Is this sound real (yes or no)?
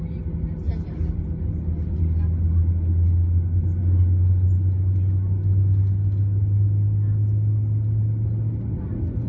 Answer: yes